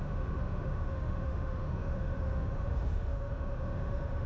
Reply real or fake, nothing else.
fake